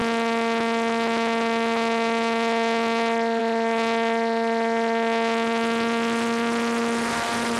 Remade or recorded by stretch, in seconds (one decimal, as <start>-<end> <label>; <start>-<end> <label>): 0.0-7.6 recorded